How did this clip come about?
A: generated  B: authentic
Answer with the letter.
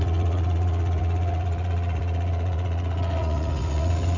A